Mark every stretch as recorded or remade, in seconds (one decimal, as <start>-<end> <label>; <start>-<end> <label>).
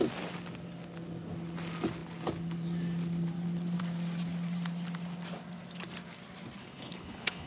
0.0-6.6 recorded; 6.6-7.5 remade